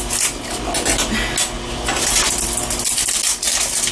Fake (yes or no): no